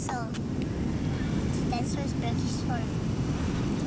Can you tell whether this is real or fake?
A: fake